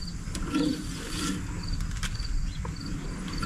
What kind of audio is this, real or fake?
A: real